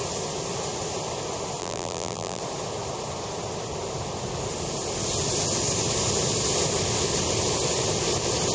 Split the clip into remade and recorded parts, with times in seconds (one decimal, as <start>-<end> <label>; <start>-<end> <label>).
0.0-1.6 recorded; 1.6-2.4 remade; 2.4-8.5 recorded